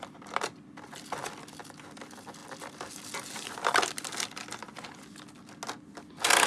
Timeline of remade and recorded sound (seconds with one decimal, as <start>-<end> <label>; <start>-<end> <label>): 0.0-6.5 recorded